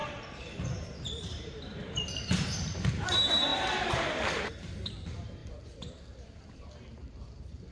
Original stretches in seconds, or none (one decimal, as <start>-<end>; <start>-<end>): none

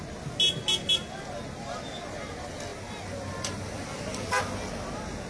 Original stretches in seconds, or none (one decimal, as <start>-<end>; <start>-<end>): 0.0-5.3

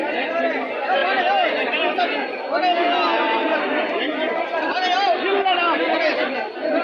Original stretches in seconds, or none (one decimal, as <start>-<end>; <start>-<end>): 0.0-6.8

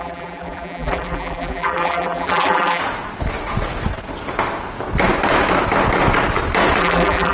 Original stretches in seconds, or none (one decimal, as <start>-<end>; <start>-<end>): 2.8-6.8